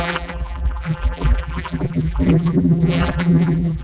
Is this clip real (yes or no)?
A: no